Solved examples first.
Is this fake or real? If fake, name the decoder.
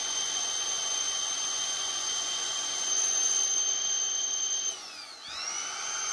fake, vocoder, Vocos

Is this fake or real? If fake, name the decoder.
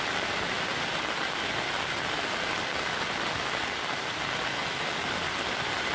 real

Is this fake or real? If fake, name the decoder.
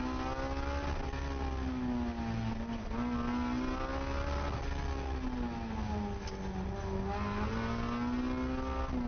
real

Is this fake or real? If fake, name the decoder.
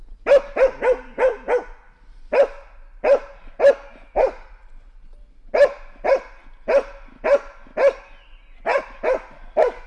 real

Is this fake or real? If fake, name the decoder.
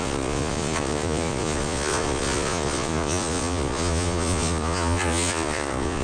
fake, vocoder, Vocos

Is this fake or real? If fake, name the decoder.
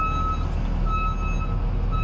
real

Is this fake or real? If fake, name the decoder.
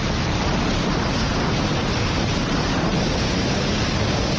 real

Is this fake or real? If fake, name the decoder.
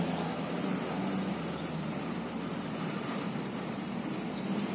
real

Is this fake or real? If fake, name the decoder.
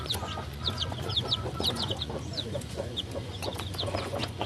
fake, vocoder, Vocos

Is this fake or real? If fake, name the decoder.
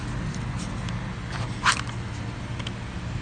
real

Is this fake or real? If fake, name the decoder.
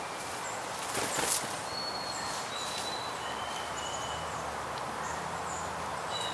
real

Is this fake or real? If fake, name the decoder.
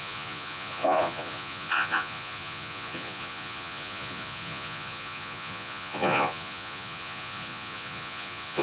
fake, vocoder, Vocos